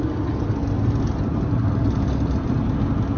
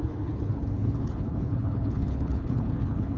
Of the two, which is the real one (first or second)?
first